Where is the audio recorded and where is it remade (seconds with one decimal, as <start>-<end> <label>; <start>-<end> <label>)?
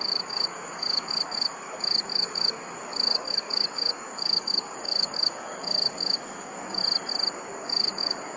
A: 0.0-6.8 remade; 6.8-7.3 recorded; 7.3-8.4 remade